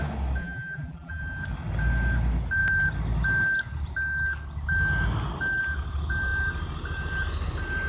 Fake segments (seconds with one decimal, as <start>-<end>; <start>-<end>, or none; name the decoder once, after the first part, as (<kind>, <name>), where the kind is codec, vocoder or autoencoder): 0.4-1.2 (vocoder, BigVGAN v2)